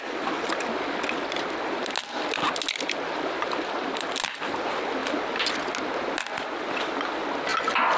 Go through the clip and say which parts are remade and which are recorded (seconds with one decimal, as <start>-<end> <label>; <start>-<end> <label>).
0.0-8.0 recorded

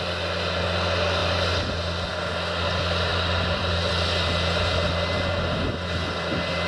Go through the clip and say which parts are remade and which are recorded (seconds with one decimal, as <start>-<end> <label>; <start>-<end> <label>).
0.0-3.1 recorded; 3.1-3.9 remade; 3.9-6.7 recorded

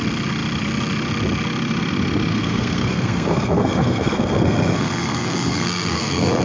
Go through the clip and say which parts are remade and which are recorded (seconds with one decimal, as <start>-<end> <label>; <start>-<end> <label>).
0.0-2.3 recorded; 2.3-6.4 remade

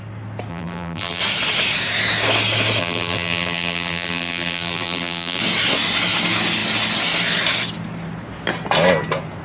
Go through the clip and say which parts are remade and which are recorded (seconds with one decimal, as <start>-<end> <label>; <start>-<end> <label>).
0.0-0.5 recorded; 0.5-1.2 remade; 1.2-2.8 recorded; 2.8-5.4 remade; 5.4-9.4 recorded

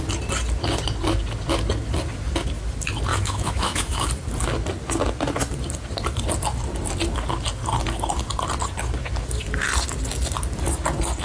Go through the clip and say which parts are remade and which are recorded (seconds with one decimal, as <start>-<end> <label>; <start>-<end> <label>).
0.0-3.1 recorded; 3.1-4.1 remade; 4.1-11.2 recorded

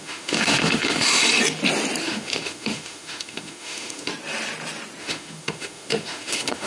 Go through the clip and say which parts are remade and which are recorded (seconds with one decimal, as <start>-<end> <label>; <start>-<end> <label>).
0.0-1.2 remade; 1.2-2.0 recorded; 2.0-4.1 remade; 4.1-5.0 recorded; 5.0-6.7 remade